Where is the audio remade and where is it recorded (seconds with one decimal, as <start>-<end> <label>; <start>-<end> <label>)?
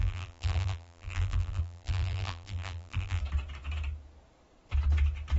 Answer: 0.0-3.2 remade; 3.2-5.4 recorded